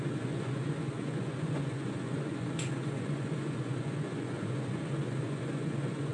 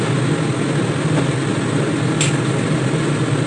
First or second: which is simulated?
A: first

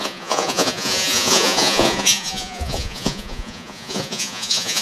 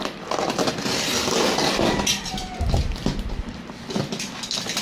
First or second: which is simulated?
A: first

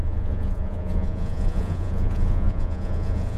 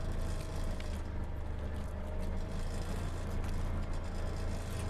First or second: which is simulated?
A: first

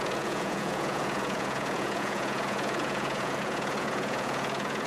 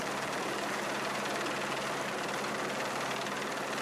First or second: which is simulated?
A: first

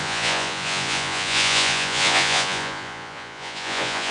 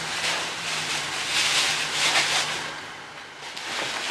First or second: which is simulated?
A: first